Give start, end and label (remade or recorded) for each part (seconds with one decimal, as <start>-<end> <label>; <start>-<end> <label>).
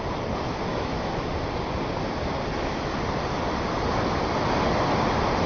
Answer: 0.0-0.7 recorded; 0.7-1.3 remade; 1.3-2.5 recorded; 2.5-3.0 remade; 3.0-5.5 recorded